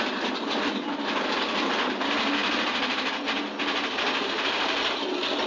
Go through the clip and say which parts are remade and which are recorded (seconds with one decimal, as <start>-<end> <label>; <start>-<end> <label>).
0.0-5.5 recorded

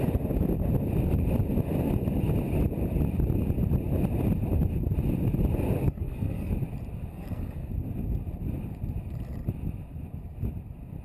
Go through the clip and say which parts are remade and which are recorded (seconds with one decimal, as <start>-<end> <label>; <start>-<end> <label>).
0.0-5.8 recorded; 5.8-6.5 remade; 6.5-7.1 recorded; 7.1-7.7 remade; 7.7-11.0 recorded

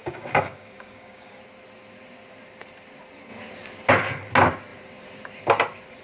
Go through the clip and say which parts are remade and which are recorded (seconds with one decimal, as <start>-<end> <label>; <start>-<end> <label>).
0.0-1.4 remade; 1.4-6.0 recorded

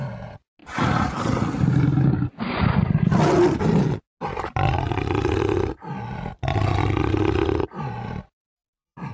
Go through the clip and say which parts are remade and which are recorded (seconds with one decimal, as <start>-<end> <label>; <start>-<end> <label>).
0.0-9.1 recorded